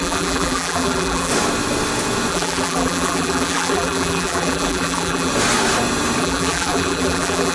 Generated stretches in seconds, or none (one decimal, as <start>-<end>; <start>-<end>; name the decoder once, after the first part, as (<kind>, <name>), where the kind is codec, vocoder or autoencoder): 0.0-1.3 (vocoder, BigVGAN v2); 2.3-5.3; 6.2-7.5